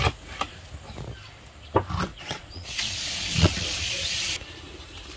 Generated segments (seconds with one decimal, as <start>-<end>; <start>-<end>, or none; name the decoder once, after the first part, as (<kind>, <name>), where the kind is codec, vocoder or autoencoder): 2.1-4.2 (vocoder, Vocos)